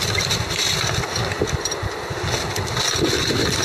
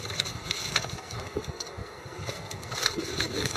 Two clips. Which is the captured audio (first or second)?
first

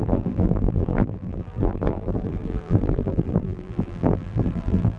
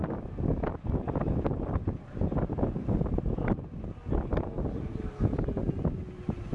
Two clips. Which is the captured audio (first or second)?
second